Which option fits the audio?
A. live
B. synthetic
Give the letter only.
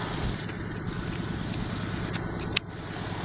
A